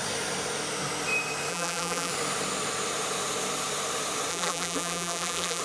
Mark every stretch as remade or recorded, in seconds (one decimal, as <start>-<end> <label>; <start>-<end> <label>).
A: 0.0-1.5 recorded; 1.5-2.1 remade; 2.1-4.3 recorded; 4.3-5.6 remade